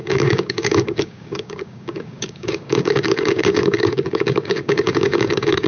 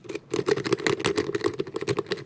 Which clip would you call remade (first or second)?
first